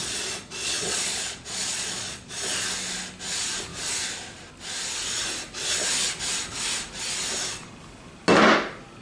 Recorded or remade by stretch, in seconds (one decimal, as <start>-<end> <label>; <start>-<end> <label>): 0.0-2.5 remade; 2.5-9.0 recorded